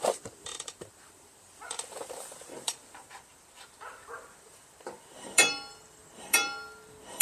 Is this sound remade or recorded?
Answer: remade